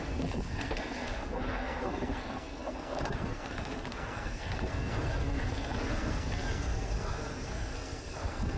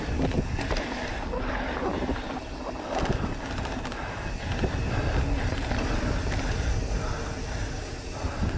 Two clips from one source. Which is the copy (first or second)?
first